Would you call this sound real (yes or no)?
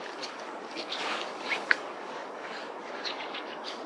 no